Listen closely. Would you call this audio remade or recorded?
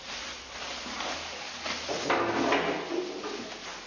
recorded